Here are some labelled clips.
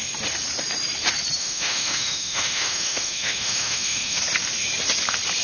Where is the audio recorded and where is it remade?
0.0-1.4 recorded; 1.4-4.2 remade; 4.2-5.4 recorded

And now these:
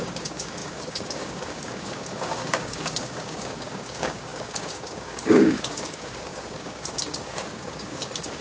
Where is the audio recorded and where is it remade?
0.0-8.4 remade

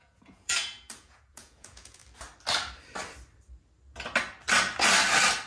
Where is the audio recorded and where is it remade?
0.0-2.0 remade; 2.0-5.5 recorded

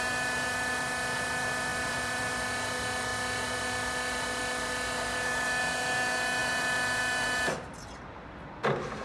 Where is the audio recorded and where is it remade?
0.0-1.7 recorded; 1.7-2.3 remade; 2.3-6.4 recorded; 6.4-7.0 remade; 7.0-9.0 recorded

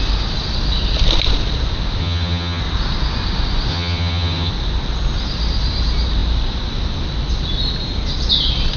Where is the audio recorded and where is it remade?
0.0-2.0 recorded; 2.0-2.6 remade; 2.6-3.7 recorded; 3.7-4.5 remade; 4.5-8.8 recorded

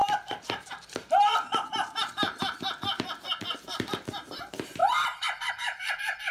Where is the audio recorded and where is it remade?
0.0-6.3 remade

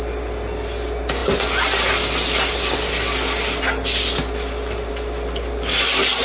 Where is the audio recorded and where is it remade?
0.0-6.2 recorded

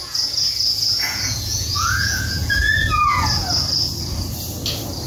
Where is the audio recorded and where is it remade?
0.0-3.4 remade; 3.4-5.1 recorded